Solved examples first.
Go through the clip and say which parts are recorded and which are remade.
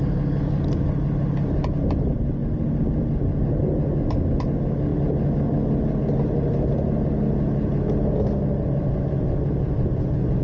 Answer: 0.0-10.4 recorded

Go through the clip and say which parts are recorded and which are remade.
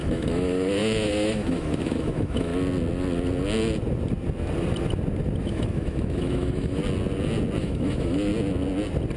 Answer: 0.0-2.5 remade; 2.5-5.4 recorded; 5.4-6.8 remade; 6.8-7.6 recorded; 7.6-8.3 remade; 8.3-9.2 recorded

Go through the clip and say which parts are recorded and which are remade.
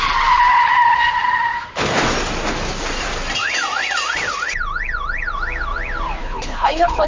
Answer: 0.0-6.2 recorded; 6.2-7.1 remade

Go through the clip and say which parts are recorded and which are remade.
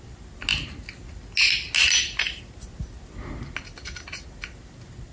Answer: 0.0-5.1 recorded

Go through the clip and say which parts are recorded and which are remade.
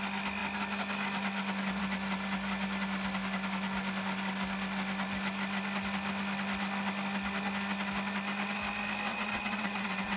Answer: 0.0-9.1 recorded; 9.1-10.2 remade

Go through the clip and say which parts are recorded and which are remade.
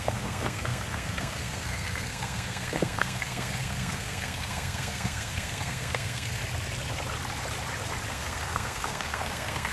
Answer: 0.0-6.4 remade; 6.4-8.1 recorded; 8.1-9.7 remade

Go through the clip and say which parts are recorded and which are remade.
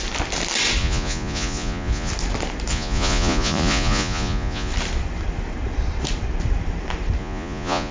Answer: 0.0-0.8 recorded; 0.8-2.1 remade; 2.1-2.7 recorded; 2.7-4.7 remade; 4.7-7.2 recorded; 7.2-7.9 remade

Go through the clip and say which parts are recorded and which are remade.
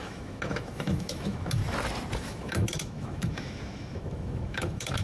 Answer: 0.0-1.6 remade; 1.6-2.2 recorded; 2.2-5.0 remade